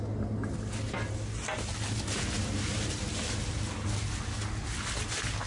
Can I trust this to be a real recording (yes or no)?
yes